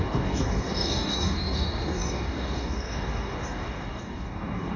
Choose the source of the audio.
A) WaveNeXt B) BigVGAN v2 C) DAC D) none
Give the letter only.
C